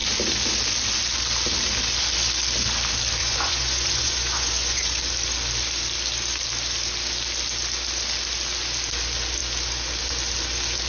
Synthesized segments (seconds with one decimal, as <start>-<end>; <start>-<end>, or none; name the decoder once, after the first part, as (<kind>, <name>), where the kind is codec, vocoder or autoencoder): 3.2-5.0 (vocoder, Vocos)